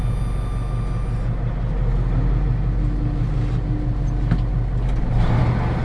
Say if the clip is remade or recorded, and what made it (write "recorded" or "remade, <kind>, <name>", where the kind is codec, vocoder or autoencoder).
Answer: recorded